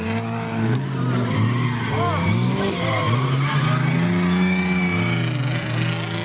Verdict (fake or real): real